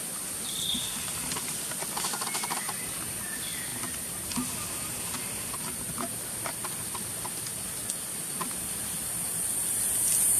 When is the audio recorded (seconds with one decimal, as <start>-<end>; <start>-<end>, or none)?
0.0-10.4